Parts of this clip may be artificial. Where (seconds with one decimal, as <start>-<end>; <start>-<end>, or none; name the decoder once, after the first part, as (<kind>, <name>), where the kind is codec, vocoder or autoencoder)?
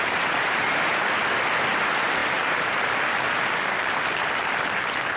none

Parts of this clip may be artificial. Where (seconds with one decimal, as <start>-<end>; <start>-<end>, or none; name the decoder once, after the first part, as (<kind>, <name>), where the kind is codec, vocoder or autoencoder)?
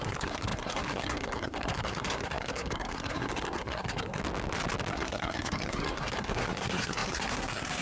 0.0-4.2 (codec, SNAC); 4.9-7.8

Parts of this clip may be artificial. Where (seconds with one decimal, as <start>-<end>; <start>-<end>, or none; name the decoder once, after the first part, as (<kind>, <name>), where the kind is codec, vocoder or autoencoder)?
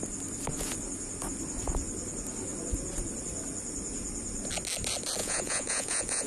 5.2-6.3 (vocoder, Vocos)